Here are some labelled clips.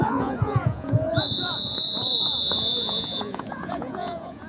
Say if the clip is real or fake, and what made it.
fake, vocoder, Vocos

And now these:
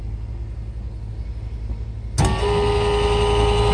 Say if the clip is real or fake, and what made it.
real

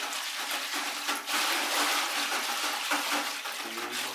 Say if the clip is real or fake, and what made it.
real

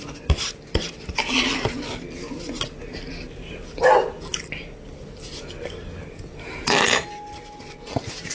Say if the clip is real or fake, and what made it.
real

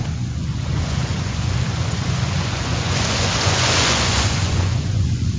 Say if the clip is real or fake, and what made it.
fake, vocoder, Vocos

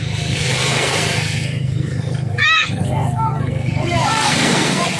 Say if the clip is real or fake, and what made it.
fake, codec, SNAC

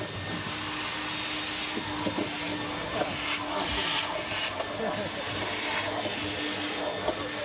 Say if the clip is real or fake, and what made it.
real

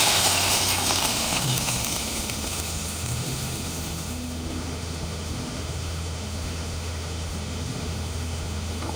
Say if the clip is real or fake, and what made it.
fake, autoencoder, DAC-VAE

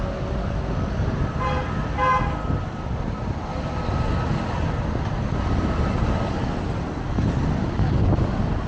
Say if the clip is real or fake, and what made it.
real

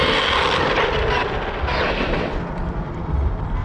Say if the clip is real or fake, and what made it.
real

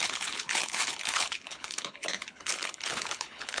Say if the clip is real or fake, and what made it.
fake, codec, HILCodec